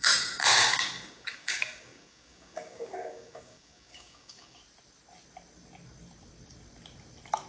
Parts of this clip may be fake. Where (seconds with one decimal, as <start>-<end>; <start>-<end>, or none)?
0.0-4.6